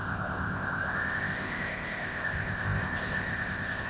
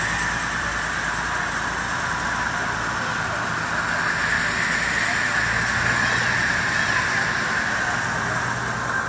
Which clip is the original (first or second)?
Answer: second